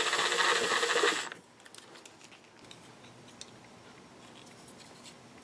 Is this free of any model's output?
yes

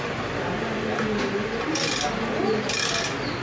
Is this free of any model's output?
yes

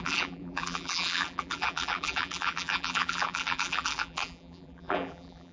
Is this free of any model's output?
no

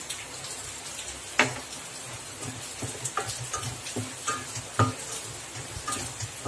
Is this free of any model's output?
yes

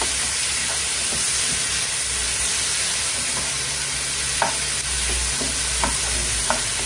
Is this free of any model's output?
yes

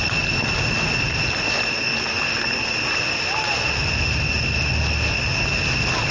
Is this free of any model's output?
yes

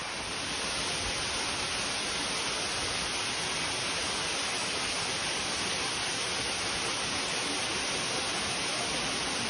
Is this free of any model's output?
yes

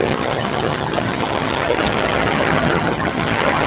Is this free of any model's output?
no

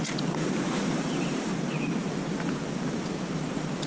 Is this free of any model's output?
yes